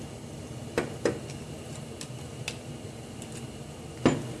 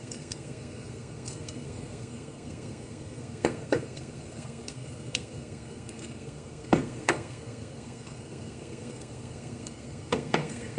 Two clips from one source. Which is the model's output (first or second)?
second